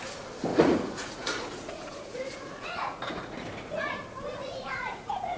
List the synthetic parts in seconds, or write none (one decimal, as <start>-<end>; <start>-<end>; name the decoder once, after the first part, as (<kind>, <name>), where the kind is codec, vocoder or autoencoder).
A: 0.5-3.7 (vocoder, Vocos); 4.4-5.4